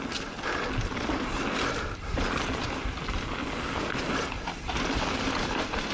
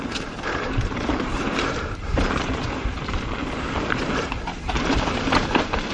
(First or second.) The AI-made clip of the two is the second